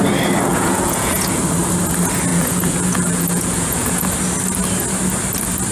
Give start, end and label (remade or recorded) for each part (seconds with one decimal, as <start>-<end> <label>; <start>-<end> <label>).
0.0-0.5 recorded; 0.5-1.4 remade; 1.4-2.3 recorded; 2.3-4.1 remade; 4.1-5.7 recorded

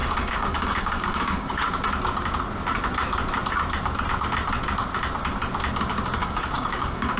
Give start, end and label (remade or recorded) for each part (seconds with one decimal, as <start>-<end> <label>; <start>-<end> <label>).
0.0-1.7 remade; 1.7-6.2 recorded; 6.2-7.2 remade

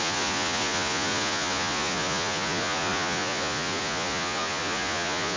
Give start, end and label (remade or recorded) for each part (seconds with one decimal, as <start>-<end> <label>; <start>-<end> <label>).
0.0-5.4 remade

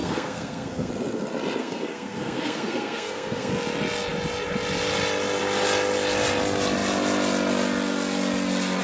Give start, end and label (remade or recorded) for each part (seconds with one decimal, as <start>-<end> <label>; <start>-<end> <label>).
0.0-0.9 remade; 0.9-1.6 recorded; 1.6-3.5 remade; 3.5-8.8 recorded